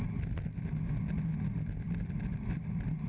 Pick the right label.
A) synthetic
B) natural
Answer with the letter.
B